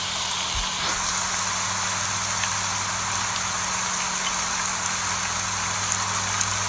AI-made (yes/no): no